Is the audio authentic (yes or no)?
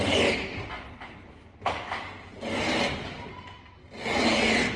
yes